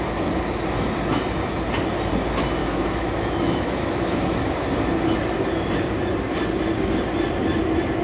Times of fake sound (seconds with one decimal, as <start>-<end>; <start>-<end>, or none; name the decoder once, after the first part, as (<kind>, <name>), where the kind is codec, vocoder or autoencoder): 2.6-4.5 (autoencoder, DAC-VAE)

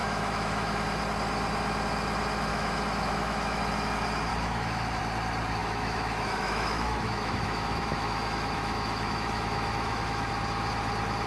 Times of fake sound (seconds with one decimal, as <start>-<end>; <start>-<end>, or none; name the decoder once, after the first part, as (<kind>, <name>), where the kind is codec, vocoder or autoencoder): 0.0-1.0 (autoencoder, DAC-VAE); 2.5-3.6; 4.3-5.0; 5.6-10.3

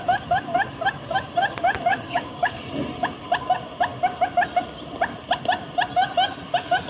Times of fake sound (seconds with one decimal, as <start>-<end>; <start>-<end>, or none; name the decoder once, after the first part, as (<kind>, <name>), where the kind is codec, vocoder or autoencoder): 1.9-2.6 (codec, DAC)